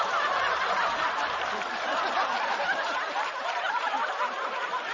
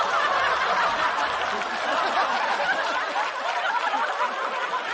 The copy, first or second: first